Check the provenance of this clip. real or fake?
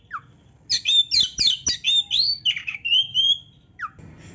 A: real